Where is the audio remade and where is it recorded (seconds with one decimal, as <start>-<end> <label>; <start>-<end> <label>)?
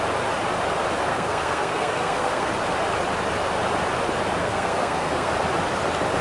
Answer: 0.0-1.1 recorded; 1.1-2.5 remade; 2.5-4.4 recorded; 4.4-5.3 remade; 5.3-6.2 recorded